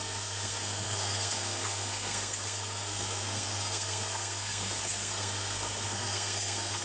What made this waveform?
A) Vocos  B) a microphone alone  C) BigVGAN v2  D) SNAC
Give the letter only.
D